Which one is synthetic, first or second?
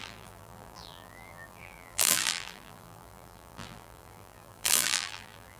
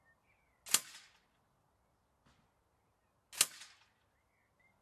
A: first